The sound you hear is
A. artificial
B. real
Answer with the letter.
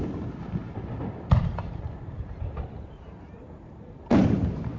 A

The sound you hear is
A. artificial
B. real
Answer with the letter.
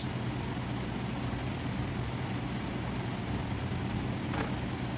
B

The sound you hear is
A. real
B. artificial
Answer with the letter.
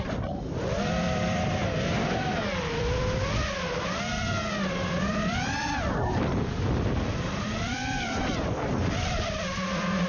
B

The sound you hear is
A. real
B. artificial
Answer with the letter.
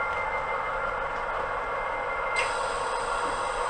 A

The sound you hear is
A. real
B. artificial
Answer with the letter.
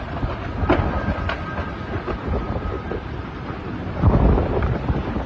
A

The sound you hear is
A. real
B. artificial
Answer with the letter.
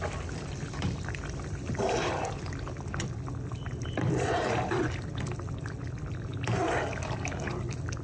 B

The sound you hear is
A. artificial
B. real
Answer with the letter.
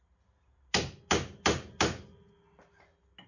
B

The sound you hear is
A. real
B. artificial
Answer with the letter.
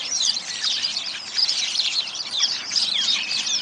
B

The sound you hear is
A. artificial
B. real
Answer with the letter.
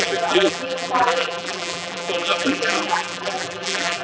A